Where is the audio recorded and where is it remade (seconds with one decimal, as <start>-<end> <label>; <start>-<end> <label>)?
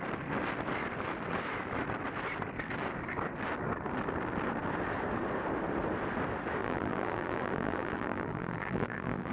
0.0-6.6 recorded; 6.6-9.3 remade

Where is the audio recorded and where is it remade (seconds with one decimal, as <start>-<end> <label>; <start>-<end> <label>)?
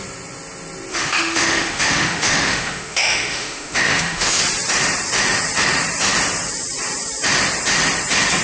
0.0-0.9 recorded; 0.9-4.4 remade; 4.4-8.4 recorded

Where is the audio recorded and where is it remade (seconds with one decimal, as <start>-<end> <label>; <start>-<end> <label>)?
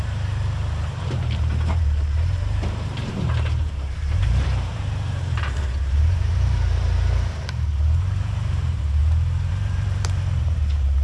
0.0-9.0 remade; 9.0-9.5 recorded; 9.5-11.0 remade